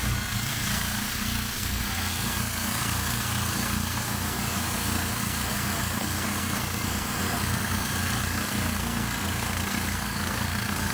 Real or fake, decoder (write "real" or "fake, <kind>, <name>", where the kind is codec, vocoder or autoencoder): fake, codec, SNAC